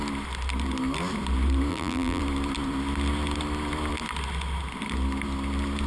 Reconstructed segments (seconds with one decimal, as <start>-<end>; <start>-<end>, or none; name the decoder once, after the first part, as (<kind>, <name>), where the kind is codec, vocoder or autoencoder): 1.7-2.2 (vocoder, BigVGAN v2)